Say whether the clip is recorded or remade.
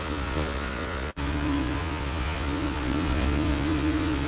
remade